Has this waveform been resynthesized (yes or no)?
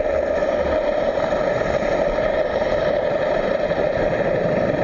yes